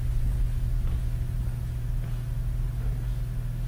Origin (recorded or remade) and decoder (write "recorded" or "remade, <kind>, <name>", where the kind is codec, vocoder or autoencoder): recorded